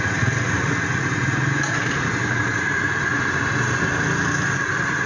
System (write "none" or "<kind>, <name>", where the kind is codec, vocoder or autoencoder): none